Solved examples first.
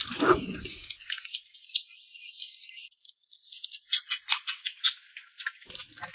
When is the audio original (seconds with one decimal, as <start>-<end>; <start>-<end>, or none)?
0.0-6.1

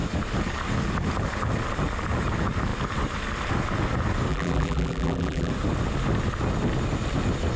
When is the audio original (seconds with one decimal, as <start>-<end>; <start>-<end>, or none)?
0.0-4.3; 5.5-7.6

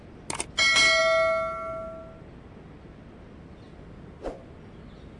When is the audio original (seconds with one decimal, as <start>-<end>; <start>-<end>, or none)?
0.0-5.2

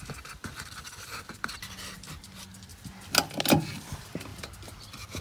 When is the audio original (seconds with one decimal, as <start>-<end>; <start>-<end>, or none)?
0.0-5.2